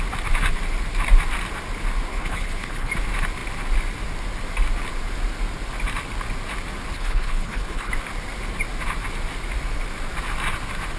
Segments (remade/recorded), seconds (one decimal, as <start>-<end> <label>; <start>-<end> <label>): 0.0-2.1 recorded; 2.1-2.9 remade; 2.9-6.9 recorded; 6.9-7.9 remade; 7.9-11.0 recorded